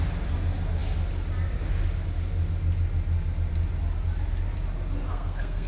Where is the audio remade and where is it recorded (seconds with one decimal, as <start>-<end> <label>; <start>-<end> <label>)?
0.0-5.1 recorded; 5.1-5.7 remade